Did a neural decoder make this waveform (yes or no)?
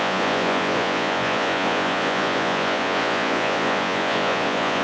yes